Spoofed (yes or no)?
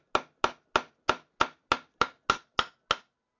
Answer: no